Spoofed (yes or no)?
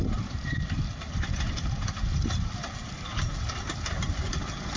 no